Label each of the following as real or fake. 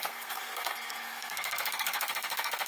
fake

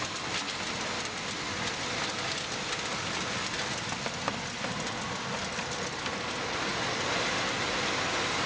real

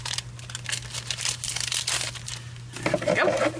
real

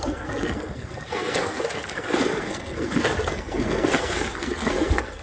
fake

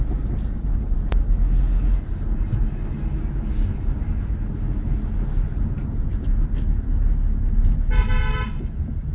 real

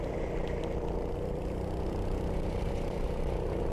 real